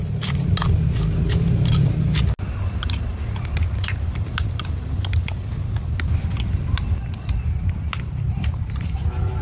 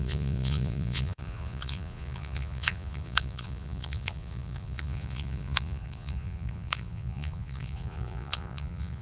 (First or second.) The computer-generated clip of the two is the second